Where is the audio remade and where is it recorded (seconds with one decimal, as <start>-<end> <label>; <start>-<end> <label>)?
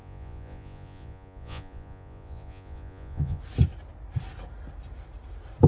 0.0-3.4 remade; 3.4-5.7 recorded